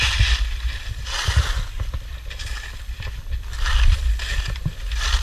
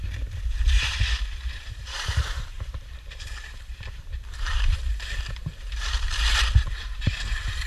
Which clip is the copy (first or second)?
second